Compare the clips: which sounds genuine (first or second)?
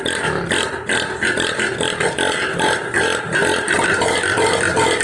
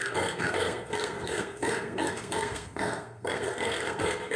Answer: first